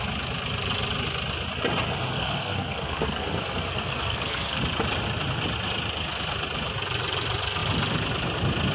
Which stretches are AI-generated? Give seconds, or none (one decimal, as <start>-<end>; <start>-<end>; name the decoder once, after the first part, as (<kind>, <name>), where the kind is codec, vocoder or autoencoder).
2.1-4.6 (codec, SNAC)